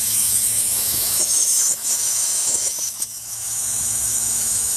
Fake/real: fake